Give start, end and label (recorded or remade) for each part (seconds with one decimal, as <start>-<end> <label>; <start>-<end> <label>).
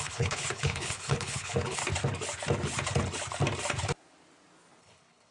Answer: 0.0-1.8 remade; 1.8-4.8 recorded; 4.8-5.3 remade